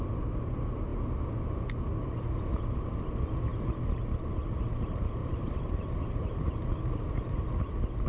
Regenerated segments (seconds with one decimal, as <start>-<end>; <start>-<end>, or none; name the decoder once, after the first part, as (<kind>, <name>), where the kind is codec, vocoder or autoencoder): 5.2-7.2 (vocoder, BigVGAN v2)